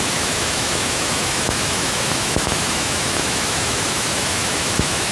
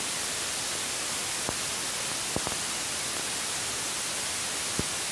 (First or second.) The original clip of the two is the second